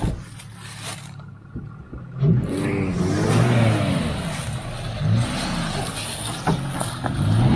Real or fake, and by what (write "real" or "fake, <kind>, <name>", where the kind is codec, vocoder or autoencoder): real